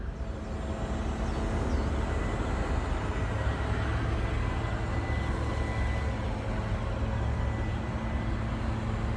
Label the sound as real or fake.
real